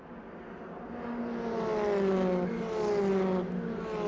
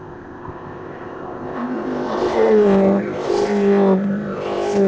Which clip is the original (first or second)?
first